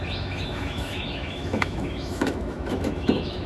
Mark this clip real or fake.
fake